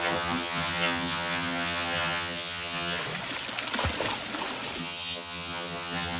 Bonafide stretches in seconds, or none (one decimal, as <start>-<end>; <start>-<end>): 3.0-4.8

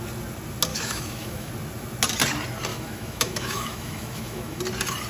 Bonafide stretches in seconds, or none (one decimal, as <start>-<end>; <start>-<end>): 0.0-0.7; 1.5-2.7; 4.6-5.1